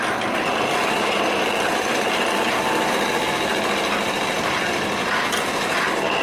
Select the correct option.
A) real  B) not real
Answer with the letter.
A